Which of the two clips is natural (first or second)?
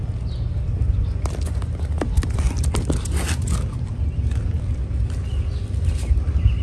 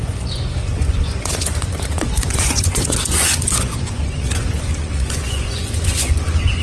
first